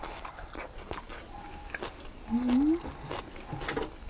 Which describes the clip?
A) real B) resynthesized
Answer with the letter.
A